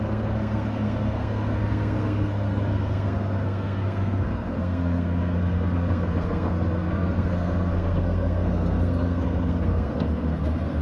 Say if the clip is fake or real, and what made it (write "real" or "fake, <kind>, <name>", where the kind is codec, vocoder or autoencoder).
fake, codec, SNAC